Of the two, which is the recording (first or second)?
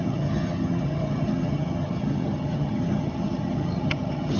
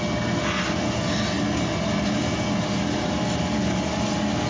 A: second